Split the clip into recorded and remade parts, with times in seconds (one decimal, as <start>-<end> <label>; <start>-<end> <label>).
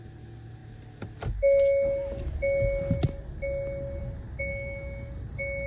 0.0-4.5 recorded; 4.5-5.1 remade; 5.1-5.7 recorded